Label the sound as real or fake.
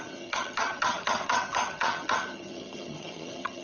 fake